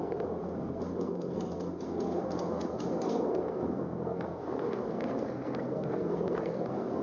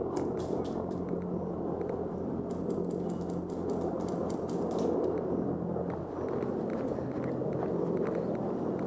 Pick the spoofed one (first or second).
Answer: first